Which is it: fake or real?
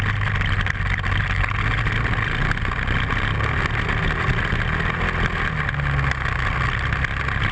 real